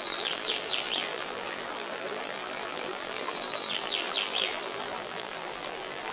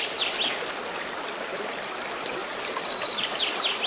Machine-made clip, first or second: first